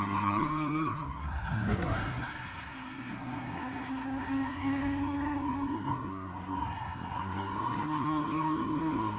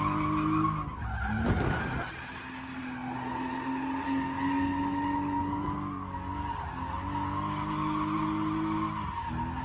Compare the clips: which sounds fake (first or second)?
first